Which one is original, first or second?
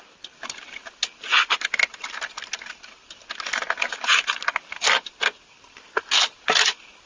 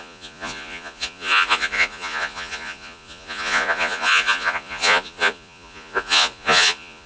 first